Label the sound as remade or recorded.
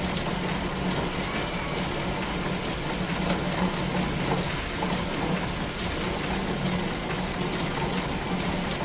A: recorded